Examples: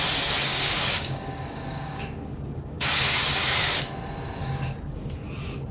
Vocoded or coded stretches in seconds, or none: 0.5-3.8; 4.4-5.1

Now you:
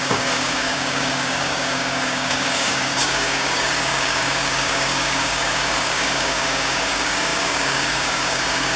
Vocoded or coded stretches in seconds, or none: 0.0-8.8